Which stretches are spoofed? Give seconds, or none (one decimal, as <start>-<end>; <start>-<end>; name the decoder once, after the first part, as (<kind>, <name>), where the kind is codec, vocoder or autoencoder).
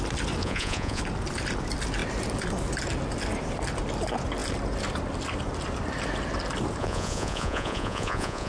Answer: 0.4-1.0 (vocoder, Vocos); 6.8-8.5